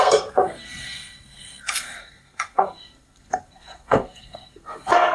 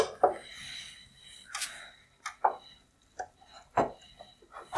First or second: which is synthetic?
first